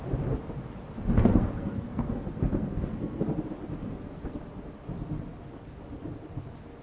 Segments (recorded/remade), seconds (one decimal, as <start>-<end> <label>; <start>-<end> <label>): 0.0-1.2 recorded; 1.2-3.2 remade; 3.2-3.8 recorded; 3.8-4.4 remade; 4.4-6.8 recorded